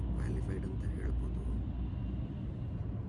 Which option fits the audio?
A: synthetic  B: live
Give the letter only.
B